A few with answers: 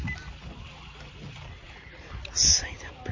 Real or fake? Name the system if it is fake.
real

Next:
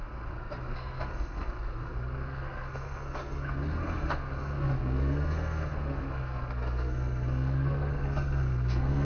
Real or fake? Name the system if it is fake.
fake, codec, SNAC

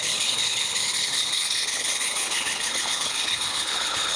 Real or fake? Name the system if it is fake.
fake, codec, HILCodec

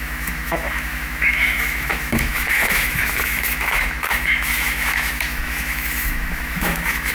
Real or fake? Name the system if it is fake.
fake, autoencoder, DAC-VAE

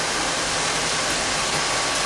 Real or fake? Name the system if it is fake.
real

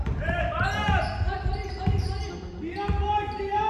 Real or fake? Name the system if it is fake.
real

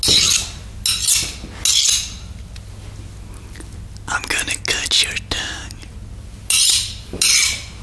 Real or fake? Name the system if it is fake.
real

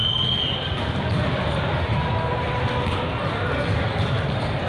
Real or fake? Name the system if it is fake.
real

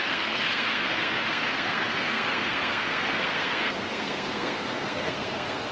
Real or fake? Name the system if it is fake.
fake, codec, SNAC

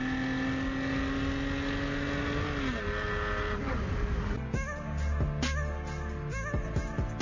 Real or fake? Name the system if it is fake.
real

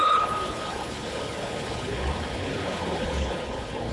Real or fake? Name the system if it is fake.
fake, codec, HILCodec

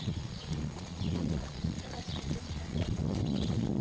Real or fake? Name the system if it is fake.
fake, vocoder, Vocos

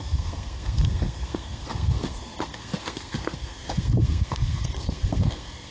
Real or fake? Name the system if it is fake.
fake, codec, SNAC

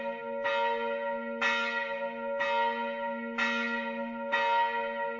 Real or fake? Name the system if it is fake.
real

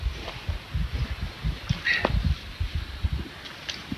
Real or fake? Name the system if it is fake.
real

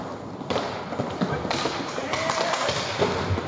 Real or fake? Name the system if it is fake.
real